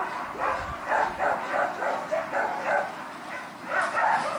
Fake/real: real